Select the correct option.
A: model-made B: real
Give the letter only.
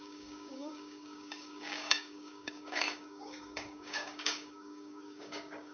A